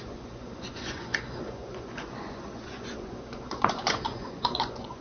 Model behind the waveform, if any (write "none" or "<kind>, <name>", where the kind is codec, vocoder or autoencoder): vocoder, Vocos